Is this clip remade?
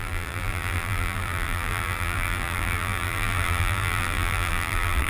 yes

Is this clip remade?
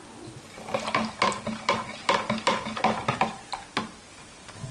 no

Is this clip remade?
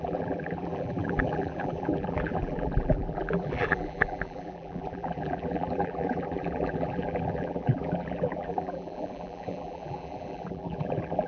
yes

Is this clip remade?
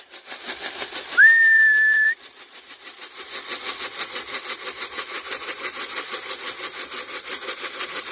yes